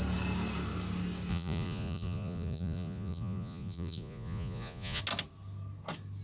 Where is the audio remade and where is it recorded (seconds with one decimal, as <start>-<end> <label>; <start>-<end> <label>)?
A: 0.0-1.3 recorded; 1.3-5.0 remade; 5.0-6.2 recorded